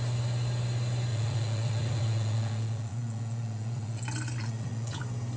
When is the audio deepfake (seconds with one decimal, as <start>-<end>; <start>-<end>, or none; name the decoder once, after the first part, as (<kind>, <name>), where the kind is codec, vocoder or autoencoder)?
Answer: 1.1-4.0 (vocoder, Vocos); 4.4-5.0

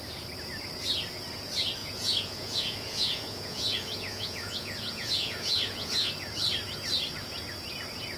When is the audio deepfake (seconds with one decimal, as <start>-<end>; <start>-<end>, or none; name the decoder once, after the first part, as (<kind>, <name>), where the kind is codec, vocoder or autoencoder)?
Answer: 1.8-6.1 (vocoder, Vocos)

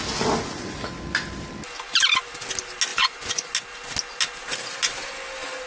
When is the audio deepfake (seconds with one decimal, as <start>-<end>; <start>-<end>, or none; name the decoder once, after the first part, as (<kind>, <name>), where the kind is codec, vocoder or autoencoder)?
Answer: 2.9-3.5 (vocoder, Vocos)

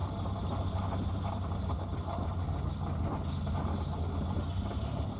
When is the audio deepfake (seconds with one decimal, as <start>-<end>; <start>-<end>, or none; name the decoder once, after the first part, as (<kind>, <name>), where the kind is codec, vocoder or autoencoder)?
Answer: none